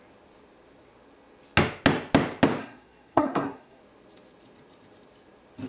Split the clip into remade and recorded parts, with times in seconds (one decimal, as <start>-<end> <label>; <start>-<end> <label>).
0.0-2.6 recorded; 2.6-3.8 remade; 3.8-5.7 recorded